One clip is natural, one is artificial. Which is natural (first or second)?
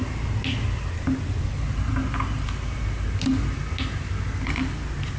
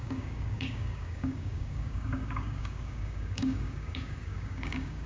first